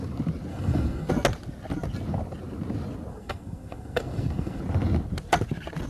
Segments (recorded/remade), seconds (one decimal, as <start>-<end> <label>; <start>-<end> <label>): 0.0-0.5 recorded; 0.5-1.1 remade; 1.1-3.1 recorded; 3.1-4.6 remade; 4.6-5.9 recorded